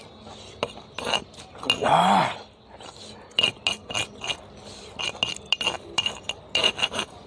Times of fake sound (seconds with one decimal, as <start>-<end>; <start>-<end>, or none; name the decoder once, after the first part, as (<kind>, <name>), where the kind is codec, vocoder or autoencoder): none